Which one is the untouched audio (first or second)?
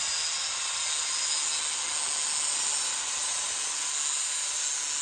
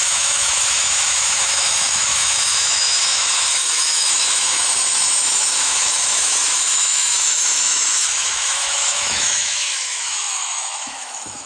first